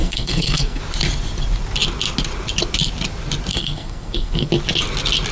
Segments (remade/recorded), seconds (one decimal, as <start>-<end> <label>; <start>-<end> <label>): 0.0-0.8 remade; 0.8-3.5 recorded; 3.5-4.5 remade; 4.5-5.3 recorded

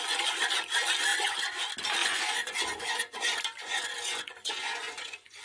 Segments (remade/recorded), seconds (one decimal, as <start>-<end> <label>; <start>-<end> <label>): 0.0-1.1 recorded; 1.1-1.6 remade; 1.6-2.0 recorded; 2.0-3.2 remade; 3.2-3.6 recorded; 3.6-5.4 remade

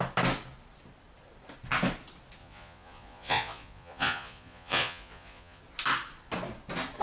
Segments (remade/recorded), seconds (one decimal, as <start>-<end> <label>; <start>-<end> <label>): 0.0-2.4 recorded; 2.4-5.6 remade; 5.6-7.0 recorded

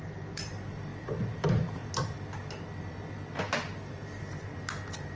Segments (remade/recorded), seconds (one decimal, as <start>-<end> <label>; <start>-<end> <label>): 0.0-1.8 remade; 1.8-5.2 recorded